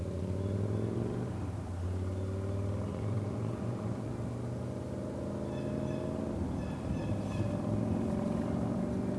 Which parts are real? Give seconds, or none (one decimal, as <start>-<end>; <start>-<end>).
0.0-2.9; 4.1-9.2